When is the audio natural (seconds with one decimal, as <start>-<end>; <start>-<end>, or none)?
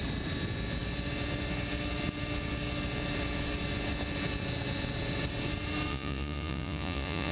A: 0.0-5.9